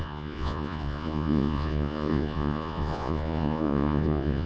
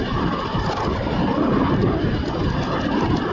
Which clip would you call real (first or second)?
second